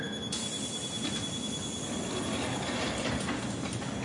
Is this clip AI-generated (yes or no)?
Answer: no